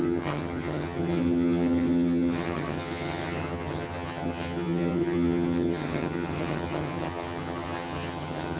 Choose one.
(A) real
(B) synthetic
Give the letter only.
B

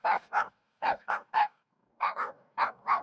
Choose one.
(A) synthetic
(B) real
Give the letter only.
A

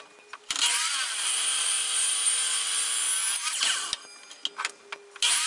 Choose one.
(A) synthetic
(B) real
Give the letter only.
B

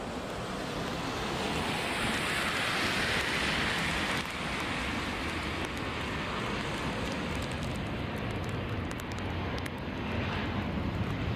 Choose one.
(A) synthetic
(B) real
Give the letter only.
B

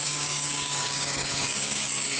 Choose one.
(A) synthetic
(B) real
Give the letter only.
A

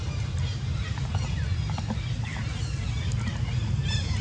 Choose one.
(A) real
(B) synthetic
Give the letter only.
A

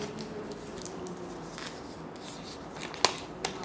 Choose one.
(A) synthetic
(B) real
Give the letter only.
B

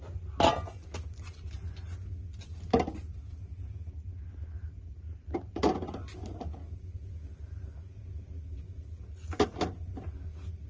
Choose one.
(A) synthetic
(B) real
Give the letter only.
B